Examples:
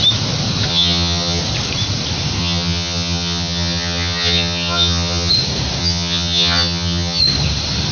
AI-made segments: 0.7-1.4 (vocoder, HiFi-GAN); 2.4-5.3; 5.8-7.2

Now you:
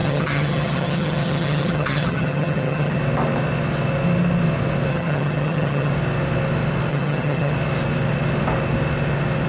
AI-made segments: 0.0-3.0 (vocoder, HiFi-GAN); 4.9-5.9; 6.9-7.5

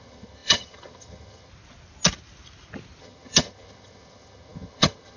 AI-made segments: 0.0-1.5 (vocoder, HiFi-GAN); 3.0-5.2

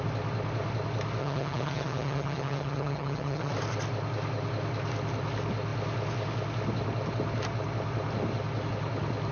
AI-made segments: 1.2-3.5 (vocoder, HiFi-GAN)

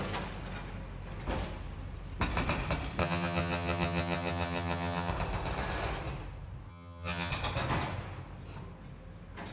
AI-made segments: 3.0-5.1 (vocoder, HiFi-GAN); 6.7-7.3

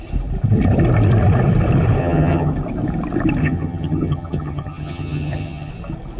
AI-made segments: 2.0-2.5 (vocoder, HiFi-GAN); 3.4-5.7

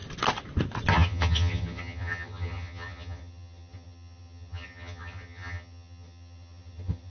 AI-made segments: 0.9-7.1 (vocoder, HiFi-GAN)